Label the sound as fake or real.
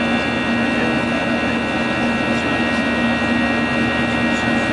real